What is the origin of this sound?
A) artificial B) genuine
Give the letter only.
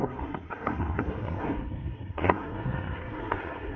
A